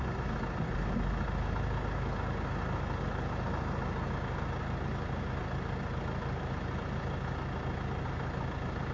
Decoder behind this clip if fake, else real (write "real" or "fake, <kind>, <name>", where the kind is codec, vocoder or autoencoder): real